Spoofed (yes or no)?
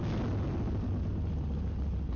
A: no